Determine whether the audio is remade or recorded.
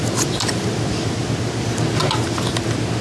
recorded